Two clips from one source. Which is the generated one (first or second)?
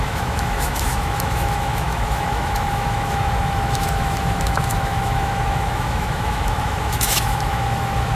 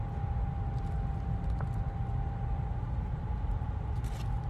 first